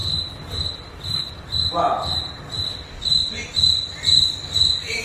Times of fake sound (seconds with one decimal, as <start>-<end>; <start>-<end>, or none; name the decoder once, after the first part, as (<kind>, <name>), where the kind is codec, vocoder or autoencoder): 0.0-1.3 (vocoder, BigVGAN v2)